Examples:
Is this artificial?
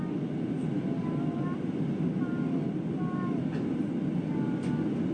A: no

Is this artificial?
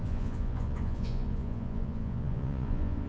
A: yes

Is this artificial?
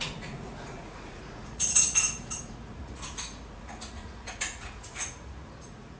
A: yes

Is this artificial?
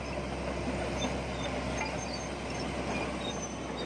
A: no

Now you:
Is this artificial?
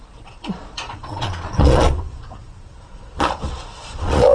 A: yes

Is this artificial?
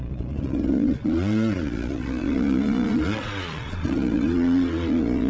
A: yes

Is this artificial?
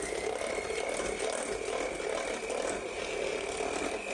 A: no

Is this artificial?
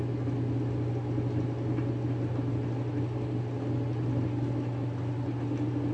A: no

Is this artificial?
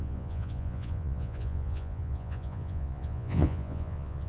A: yes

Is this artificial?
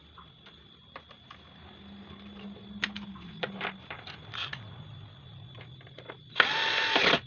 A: no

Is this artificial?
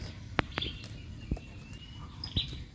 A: no